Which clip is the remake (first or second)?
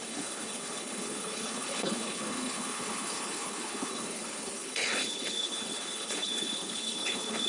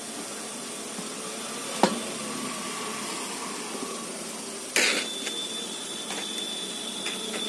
first